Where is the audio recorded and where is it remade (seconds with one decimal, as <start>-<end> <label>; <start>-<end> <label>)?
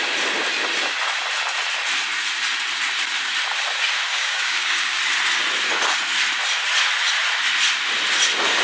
0.0-4.1 recorded; 4.1-5.0 remade; 5.0-8.6 recorded